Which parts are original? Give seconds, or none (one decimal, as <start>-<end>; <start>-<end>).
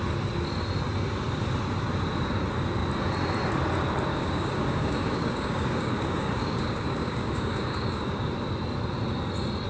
0.0-4.1; 8.3-9.7